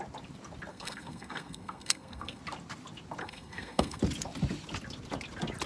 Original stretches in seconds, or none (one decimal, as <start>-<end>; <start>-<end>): 0.0-0.7; 2.4-3.2; 4.0-5.7